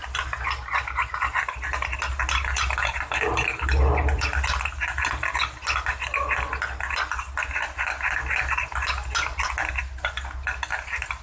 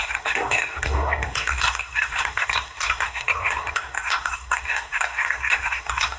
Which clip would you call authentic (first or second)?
first